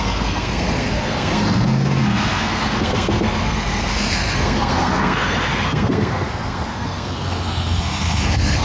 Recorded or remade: remade